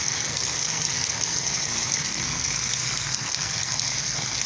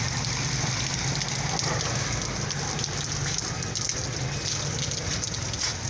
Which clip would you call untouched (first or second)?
second